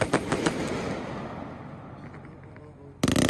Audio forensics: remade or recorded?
recorded